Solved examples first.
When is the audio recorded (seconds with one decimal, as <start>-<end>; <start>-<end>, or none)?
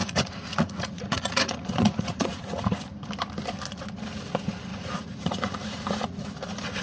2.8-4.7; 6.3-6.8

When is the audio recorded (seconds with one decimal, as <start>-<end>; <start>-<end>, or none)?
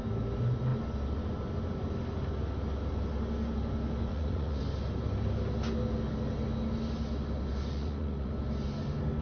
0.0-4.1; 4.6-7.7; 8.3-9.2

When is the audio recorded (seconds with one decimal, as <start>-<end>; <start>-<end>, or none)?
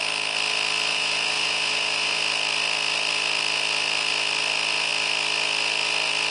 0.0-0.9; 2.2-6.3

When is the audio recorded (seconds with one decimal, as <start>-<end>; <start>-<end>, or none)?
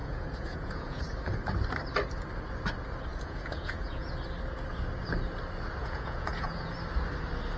1.0-3.1; 4.1-5.8; 6.7-7.6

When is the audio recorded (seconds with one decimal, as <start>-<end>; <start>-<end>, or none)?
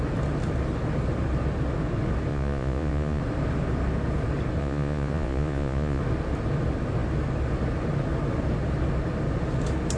0.0-2.3; 3.2-4.6; 6.0-10.0